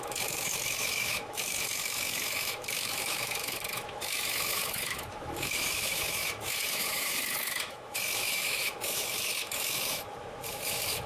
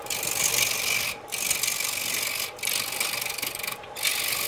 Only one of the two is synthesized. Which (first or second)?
first